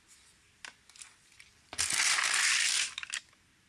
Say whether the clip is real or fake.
real